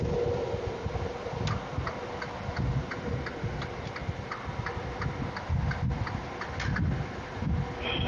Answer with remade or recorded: recorded